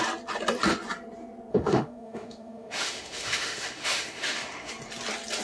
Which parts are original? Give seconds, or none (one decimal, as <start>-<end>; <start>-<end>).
0.0-1.5; 4.7-5.4